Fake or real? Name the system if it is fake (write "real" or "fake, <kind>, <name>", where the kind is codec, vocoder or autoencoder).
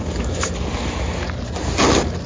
real